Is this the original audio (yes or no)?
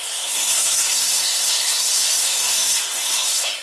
no